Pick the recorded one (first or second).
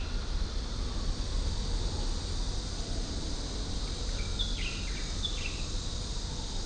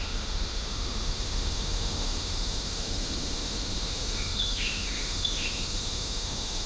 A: first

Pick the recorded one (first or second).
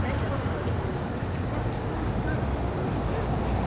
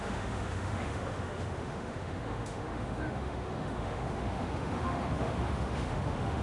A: first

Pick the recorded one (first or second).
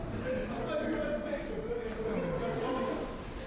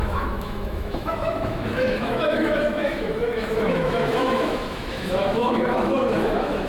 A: first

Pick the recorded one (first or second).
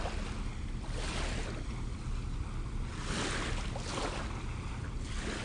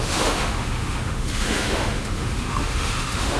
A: first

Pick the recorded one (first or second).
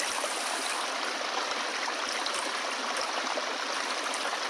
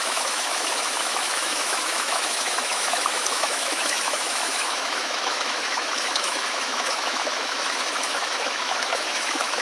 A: first